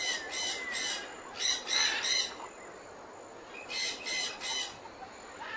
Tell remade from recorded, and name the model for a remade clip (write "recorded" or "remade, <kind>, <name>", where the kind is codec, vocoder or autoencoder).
recorded